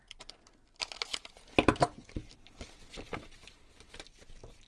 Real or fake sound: real